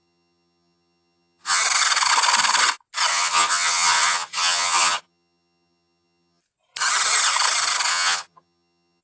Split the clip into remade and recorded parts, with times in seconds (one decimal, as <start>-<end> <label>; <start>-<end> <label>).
0.0-1.6 remade; 1.6-3.1 recorded; 3.1-6.4 remade; 6.4-7.9 recorded; 7.9-9.0 remade